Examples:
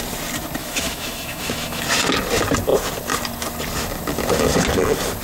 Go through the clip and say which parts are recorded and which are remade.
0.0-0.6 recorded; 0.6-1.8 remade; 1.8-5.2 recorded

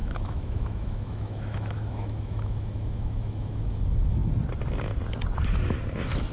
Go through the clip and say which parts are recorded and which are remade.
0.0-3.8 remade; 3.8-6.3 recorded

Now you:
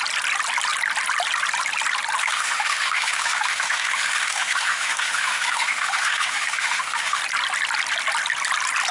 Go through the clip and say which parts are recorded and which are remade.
0.0-2.2 recorded; 2.2-7.2 remade; 7.2-8.9 recorded

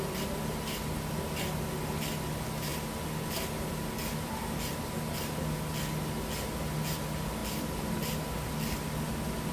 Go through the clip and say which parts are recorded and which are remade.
0.0-9.5 recorded

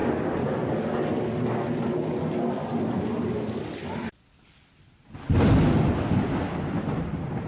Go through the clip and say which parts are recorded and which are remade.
0.0-7.5 recorded

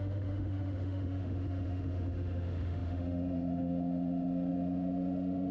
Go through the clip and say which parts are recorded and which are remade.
0.0-5.5 remade

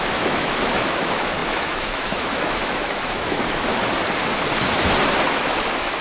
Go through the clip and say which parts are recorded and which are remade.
0.0-3.7 remade; 3.7-5.3 recorded; 5.3-6.0 remade

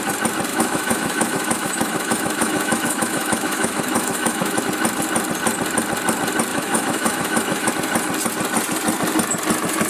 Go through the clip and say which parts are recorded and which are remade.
0.0-0.5 recorded; 0.5-4.6 remade; 4.6-6.5 recorded; 6.5-7.7 remade; 7.7-9.9 recorded